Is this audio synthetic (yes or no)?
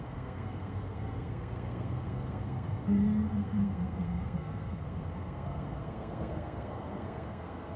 yes